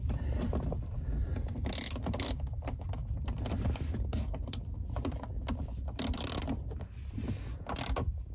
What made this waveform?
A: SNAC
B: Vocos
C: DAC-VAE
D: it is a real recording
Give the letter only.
D